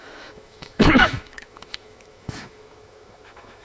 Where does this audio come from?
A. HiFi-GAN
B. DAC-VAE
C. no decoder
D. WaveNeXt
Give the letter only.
B